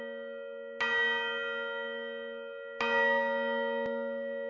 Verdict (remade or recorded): recorded